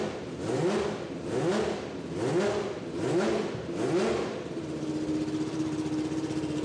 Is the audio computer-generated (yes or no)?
no